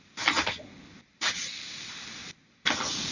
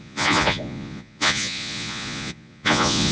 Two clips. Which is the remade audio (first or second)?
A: second